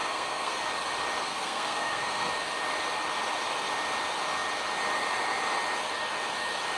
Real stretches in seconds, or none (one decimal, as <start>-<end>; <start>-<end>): 0.6-1.3; 2.3-6.8